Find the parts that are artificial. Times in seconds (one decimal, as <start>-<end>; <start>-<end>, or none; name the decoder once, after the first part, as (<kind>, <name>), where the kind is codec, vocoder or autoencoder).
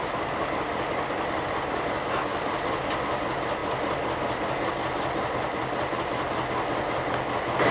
2.3-3.0 (vocoder, BigVGAN v2)